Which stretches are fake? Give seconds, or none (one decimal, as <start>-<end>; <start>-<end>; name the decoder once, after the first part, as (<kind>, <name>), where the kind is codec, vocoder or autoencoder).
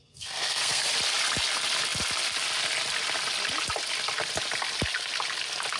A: 0.0-0.8 (codec, SNAC)